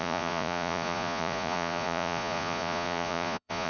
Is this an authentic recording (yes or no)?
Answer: no